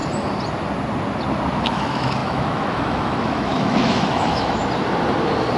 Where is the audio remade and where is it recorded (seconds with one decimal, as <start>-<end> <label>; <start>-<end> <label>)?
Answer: 0.0-1.6 recorded; 1.6-4.6 remade; 4.6-5.6 recorded